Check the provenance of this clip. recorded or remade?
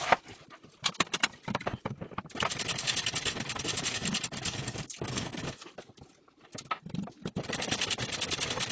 recorded